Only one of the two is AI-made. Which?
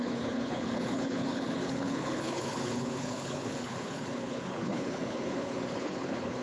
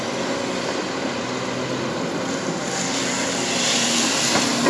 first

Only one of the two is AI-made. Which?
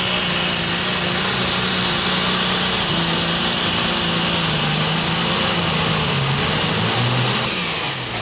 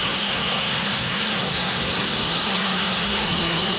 second